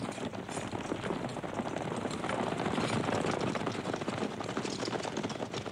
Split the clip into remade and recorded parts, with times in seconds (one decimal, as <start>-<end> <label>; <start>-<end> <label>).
0.0-5.7 recorded